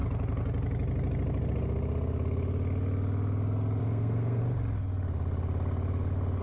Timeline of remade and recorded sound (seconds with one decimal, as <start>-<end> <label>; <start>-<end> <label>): 0.0-3.8 recorded; 3.8-4.4 remade; 4.4-6.4 recorded